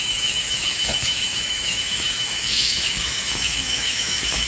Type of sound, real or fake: fake